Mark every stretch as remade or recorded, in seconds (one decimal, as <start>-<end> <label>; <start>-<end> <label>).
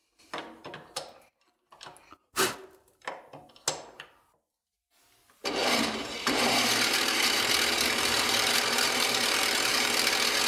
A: 0.0-5.6 recorded; 5.6-10.1 remade; 10.1-10.5 recorded